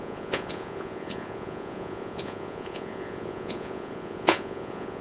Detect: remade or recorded remade